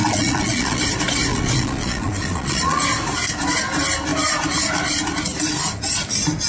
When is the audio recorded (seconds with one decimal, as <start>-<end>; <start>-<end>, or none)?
0.8-1.3; 2.8-6.5